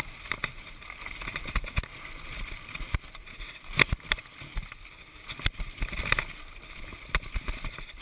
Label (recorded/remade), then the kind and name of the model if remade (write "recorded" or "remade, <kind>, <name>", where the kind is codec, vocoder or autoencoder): recorded